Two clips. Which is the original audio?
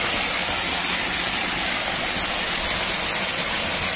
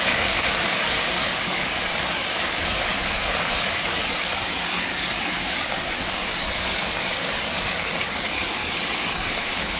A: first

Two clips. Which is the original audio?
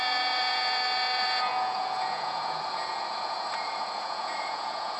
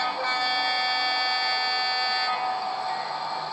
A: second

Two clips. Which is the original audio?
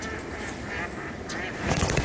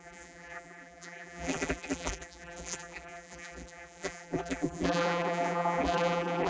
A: first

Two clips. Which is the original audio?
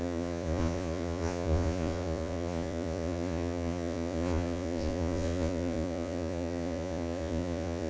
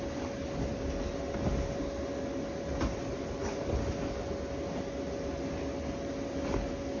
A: second